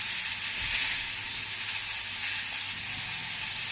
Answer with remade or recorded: recorded